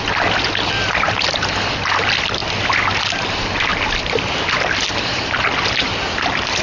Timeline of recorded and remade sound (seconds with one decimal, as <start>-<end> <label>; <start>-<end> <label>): 0.0-6.6 recorded